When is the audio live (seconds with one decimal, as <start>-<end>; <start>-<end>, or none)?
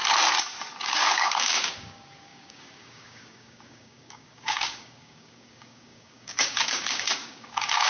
0.0-0.8